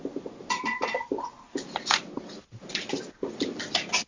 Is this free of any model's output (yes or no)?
yes